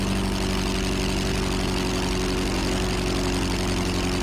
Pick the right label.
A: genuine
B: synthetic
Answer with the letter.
A